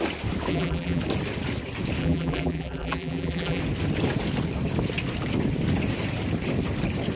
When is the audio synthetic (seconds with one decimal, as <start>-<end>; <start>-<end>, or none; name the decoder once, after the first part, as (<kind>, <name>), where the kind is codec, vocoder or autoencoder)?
0.5-1.0 (vocoder, BigVGAN v2); 2.0-3.6